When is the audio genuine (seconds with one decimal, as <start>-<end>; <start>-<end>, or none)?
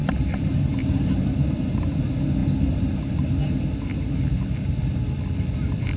1.1-6.0